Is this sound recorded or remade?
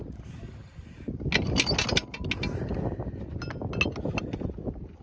recorded